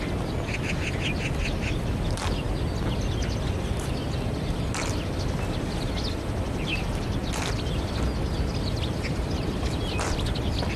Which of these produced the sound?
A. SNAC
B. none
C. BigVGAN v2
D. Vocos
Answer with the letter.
B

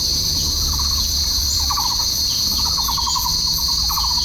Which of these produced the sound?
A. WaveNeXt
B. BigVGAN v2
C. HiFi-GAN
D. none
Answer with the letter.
B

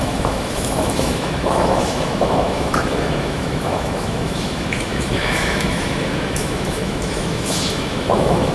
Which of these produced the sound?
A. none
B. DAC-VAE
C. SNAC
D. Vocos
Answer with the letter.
B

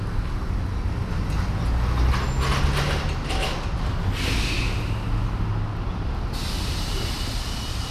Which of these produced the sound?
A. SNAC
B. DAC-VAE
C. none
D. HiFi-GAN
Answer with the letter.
C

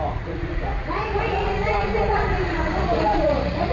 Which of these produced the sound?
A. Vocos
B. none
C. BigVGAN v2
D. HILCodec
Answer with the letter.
A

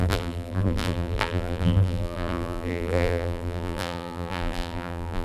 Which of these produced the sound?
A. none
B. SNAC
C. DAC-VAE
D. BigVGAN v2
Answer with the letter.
D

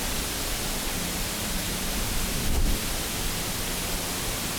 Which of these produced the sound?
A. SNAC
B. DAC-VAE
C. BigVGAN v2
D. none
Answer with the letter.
D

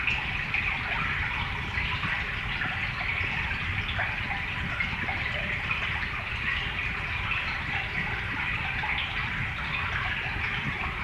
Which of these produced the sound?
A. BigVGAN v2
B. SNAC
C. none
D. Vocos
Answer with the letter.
C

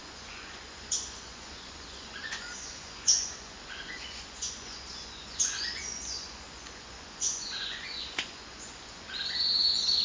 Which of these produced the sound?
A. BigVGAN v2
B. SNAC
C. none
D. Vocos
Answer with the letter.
D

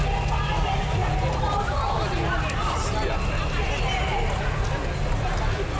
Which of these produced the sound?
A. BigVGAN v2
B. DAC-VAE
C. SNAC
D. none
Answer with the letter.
D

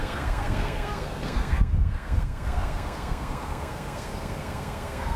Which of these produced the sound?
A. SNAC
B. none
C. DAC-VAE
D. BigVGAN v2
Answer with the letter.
A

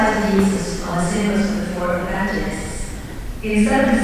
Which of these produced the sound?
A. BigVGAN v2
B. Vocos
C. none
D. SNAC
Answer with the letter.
A